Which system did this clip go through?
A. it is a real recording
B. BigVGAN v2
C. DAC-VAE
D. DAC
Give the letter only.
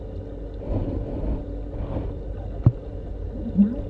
A